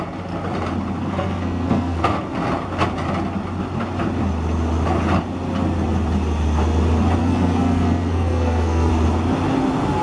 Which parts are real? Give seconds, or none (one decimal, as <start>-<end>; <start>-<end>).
0.0-1.0; 2.2-7.2; 8.9-10.0

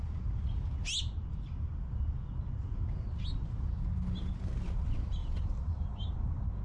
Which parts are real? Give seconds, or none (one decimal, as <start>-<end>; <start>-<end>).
0.0-5.2